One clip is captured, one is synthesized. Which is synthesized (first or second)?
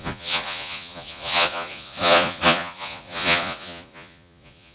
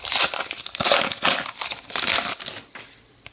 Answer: first